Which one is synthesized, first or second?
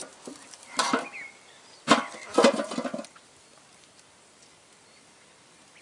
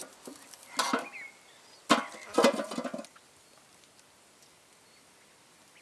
first